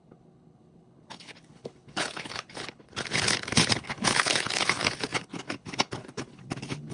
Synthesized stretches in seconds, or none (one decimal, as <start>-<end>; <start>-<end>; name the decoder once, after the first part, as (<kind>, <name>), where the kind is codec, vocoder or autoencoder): 0.0-6.9 (codec, HILCodec)